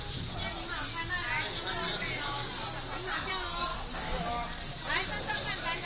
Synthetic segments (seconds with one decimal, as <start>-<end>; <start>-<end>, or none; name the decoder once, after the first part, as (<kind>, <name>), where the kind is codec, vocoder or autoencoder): 3.7-4.2 (codec, DAC)